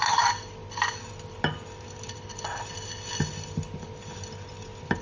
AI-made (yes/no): no